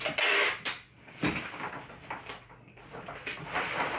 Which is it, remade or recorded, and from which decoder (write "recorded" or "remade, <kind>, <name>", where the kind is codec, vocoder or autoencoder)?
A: recorded